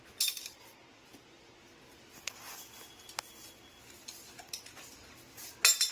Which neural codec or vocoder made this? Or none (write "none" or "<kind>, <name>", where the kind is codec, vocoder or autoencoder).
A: none